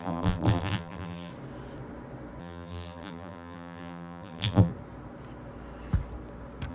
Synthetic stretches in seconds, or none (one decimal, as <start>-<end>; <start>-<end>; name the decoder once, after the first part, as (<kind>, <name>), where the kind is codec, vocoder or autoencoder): 0.0-1.3 (vocoder, BigVGAN v2); 2.4-4.7